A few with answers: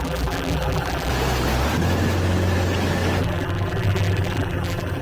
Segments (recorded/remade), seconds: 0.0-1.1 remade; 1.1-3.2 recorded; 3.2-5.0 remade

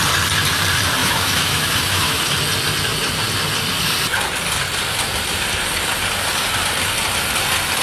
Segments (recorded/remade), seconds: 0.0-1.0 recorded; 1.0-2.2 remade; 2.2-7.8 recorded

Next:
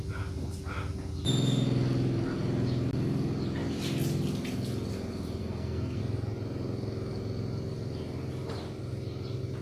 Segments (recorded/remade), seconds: 0.0-5.4 recorded; 5.4-6.0 remade; 6.0-9.6 recorded